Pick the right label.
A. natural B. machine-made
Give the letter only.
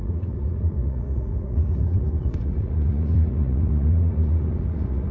B